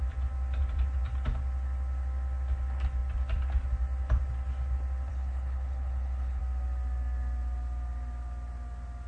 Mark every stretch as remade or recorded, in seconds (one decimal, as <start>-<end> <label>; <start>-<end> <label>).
0.0-5.1 recorded; 5.1-6.4 remade; 6.4-9.1 recorded

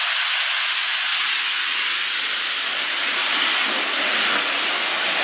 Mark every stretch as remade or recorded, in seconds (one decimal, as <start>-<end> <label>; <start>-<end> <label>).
0.0-5.2 recorded

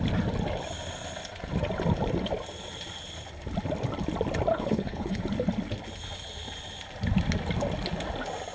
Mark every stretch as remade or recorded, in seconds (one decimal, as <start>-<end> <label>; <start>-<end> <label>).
0.0-4.5 recorded; 4.5-5.2 remade; 5.2-8.5 recorded

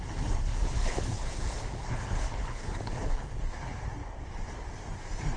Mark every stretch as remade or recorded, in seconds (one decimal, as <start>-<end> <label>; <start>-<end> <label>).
0.0-0.5 recorded; 0.5-3.7 remade; 3.7-5.4 recorded

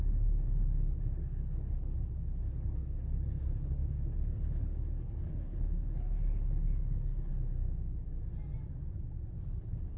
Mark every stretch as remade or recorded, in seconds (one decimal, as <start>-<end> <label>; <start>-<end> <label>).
0.0-7.3 remade; 7.3-9.6 recorded; 9.6-10.0 remade